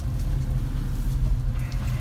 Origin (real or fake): real